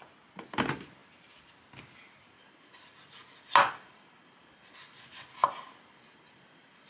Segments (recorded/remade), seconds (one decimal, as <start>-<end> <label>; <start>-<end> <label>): 0.0-5.4 recorded; 5.4-6.9 remade